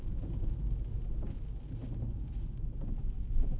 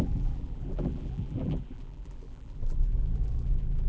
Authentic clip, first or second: first